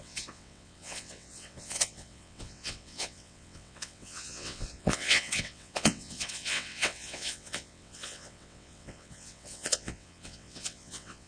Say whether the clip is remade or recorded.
remade